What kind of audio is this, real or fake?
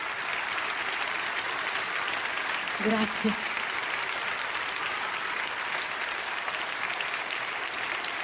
real